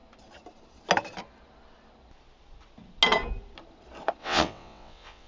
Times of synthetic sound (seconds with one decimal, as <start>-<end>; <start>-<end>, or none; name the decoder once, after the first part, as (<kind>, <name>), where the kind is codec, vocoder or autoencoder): 4.2-5.3 (vocoder, WaveNeXt)